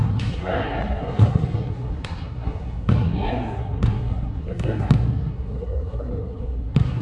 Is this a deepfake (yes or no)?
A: yes